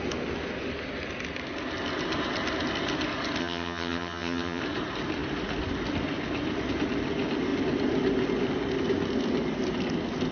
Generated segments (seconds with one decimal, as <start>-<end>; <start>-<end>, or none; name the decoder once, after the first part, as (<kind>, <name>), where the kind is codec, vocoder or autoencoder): 3.4-4.6 (vocoder, HiFi-GAN)